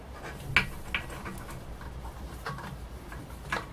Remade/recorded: recorded